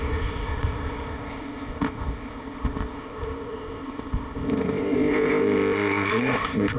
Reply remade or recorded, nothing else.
remade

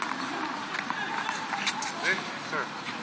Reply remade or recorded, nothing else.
recorded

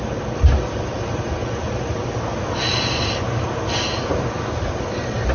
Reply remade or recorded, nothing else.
recorded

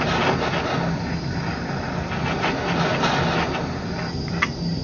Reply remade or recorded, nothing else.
recorded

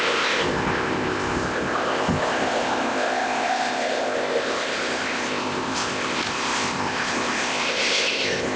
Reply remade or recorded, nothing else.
remade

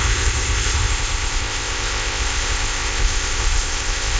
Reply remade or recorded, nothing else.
remade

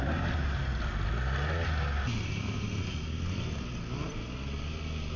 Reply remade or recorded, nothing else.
recorded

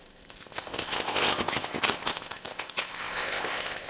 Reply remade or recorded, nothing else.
remade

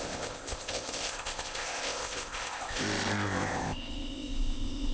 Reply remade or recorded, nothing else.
remade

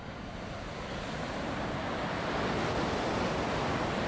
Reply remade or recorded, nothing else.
recorded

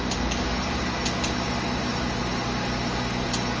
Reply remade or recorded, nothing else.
recorded